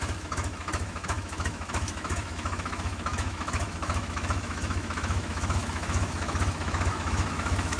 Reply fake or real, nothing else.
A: fake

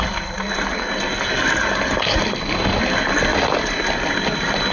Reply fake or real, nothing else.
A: real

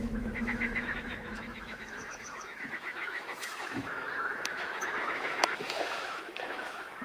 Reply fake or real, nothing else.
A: fake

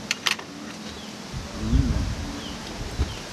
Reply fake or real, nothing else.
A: real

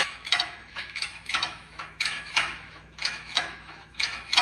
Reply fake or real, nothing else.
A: fake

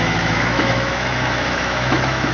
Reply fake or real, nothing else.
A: fake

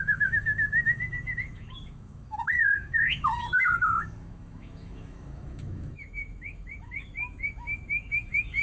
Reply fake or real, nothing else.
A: fake